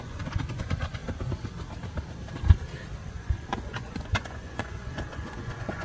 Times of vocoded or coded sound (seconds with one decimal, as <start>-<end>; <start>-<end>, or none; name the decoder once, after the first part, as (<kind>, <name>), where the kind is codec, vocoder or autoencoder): 0.0-1.0 (vocoder, Vocos); 3.1-5.8